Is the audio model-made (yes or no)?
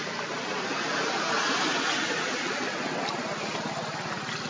no